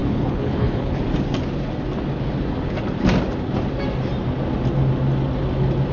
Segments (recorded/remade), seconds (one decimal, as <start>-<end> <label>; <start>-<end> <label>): 0.0-1.0 remade; 1.0-5.9 recorded